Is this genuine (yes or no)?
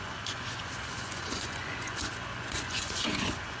no